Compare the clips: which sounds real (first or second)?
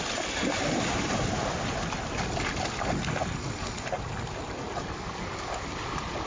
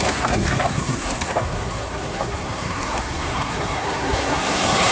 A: first